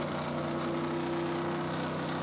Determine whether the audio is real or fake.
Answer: real